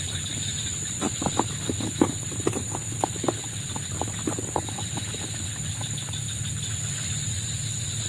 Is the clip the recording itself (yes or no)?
yes